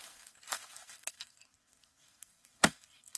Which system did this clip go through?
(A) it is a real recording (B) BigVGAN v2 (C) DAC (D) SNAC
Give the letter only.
D